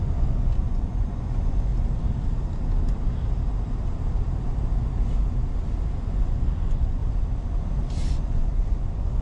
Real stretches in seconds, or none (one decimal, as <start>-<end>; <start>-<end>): 1.7-6.0; 7.0-8.1

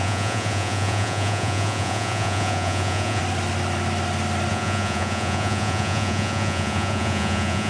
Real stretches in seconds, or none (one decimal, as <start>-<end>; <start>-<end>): 3.2-4.5